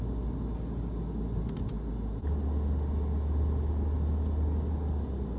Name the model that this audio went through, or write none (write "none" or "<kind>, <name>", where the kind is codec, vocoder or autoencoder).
none